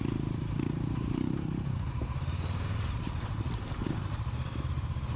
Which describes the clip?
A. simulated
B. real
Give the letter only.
A